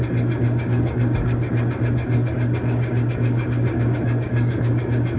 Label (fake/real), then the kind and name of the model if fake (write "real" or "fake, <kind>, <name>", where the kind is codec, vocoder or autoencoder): fake, codec, DAC